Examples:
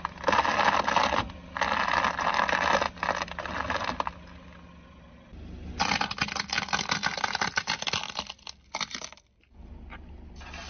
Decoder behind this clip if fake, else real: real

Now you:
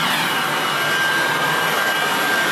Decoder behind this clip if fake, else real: real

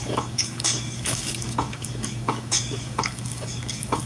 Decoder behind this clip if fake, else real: fake, codec, DAC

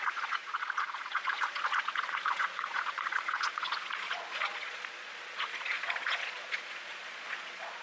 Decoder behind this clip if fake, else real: fake, vocoder, Vocos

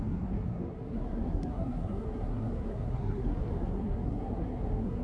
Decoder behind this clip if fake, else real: fake, codec, SNAC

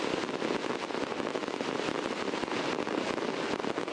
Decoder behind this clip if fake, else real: real